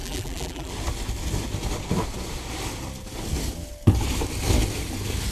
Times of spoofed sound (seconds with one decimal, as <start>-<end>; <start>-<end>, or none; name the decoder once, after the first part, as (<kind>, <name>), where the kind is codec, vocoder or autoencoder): 0.0-0.7 (vocoder, BigVGAN v2)